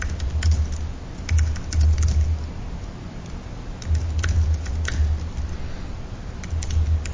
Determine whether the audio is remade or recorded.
recorded